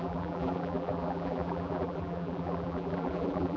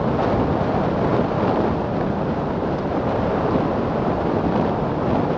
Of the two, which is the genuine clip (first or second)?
second